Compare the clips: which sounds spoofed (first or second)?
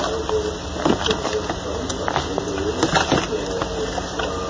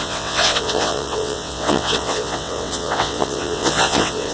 second